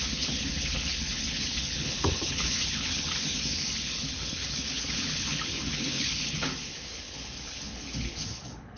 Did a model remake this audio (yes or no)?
yes